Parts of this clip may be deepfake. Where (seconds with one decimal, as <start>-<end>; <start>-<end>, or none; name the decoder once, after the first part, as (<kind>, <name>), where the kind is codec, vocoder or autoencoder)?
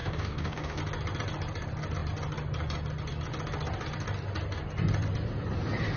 0.0-0.8 (codec, DAC)